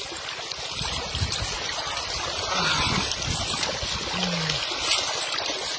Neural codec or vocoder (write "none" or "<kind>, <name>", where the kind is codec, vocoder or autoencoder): none